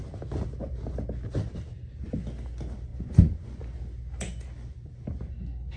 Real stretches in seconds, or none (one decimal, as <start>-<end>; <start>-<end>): 0.0-2.9; 3.6-5.8